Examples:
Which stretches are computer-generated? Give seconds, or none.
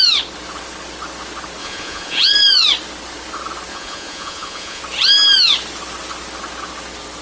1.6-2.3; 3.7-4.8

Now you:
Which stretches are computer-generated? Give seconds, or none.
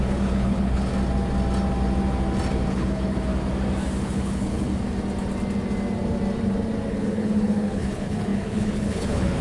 0.0-0.9; 2.7-3.3; 4.0-4.7; 6.9-9.4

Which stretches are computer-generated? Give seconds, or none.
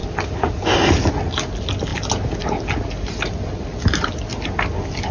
none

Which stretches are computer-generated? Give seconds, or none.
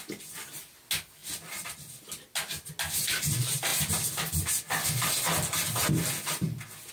none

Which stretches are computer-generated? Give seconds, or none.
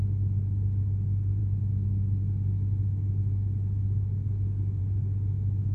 none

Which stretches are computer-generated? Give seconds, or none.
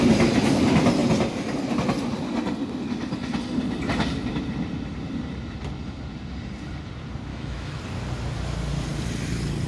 7.3-7.8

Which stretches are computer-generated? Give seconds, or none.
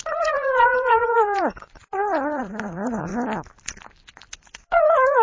0.0-3.1; 4.4-5.2